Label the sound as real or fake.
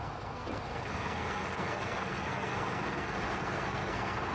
fake